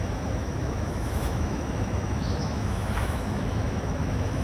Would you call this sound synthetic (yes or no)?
yes